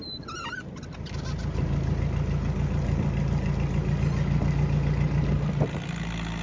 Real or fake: real